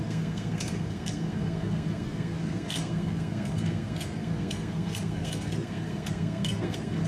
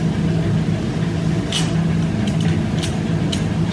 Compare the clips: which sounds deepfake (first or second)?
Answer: first